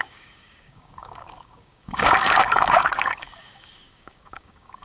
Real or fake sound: fake